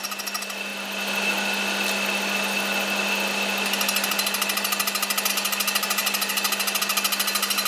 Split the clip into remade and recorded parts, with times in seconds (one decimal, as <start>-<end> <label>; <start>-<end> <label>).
0.0-7.7 recorded

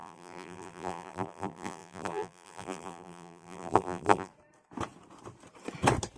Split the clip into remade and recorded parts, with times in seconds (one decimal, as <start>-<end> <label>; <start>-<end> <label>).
0.0-4.3 remade; 4.3-6.2 recorded

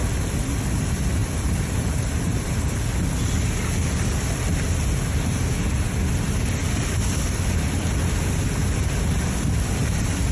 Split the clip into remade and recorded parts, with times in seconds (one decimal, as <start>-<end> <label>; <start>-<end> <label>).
0.0-1.2 recorded; 1.2-2.6 remade; 2.6-10.3 recorded

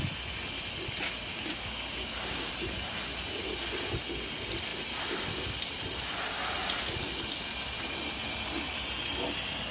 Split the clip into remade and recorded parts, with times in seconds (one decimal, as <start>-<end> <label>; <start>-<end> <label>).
0.0-1.3 recorded; 1.3-2.5 remade; 2.5-9.7 recorded

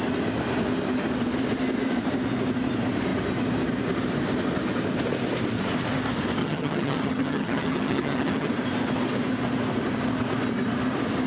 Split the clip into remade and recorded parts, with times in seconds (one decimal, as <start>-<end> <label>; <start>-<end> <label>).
0.0-6.4 recorded; 6.4-8.5 remade; 8.5-11.3 recorded

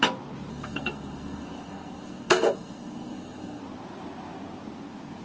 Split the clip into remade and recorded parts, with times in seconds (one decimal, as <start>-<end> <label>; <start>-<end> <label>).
0.0-0.5 recorded; 0.5-3.6 remade; 3.6-5.2 recorded